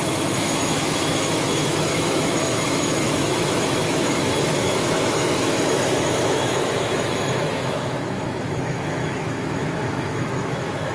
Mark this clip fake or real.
fake